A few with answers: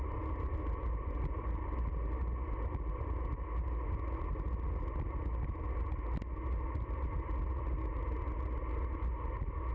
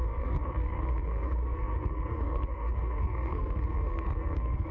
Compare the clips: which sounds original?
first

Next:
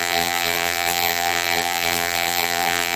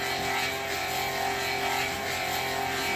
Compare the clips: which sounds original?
second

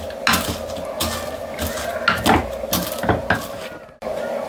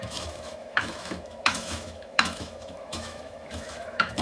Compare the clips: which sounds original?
first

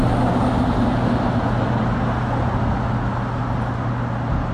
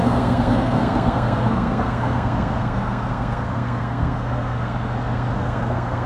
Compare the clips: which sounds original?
first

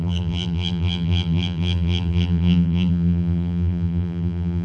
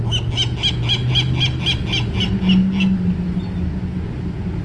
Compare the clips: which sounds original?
second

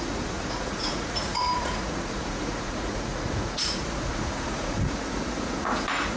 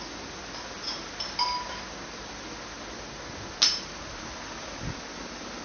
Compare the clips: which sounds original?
second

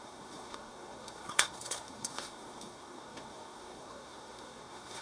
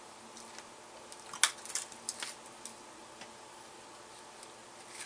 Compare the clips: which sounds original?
second